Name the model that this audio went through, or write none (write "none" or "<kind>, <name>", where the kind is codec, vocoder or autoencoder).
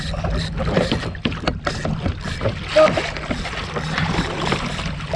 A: none